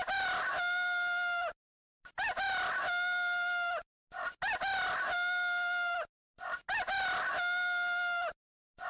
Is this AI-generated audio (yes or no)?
no